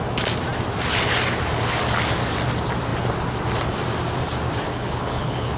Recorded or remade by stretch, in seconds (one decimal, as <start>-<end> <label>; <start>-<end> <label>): 0.0-4.7 recorded; 4.7-5.6 remade